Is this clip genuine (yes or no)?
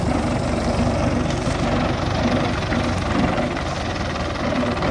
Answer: yes